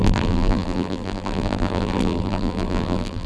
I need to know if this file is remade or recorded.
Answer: remade